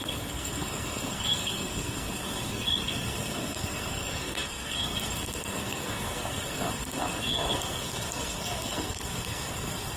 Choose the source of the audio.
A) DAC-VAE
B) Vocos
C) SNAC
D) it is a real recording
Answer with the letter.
C